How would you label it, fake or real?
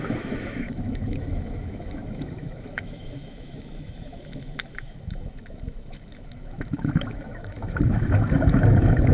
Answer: fake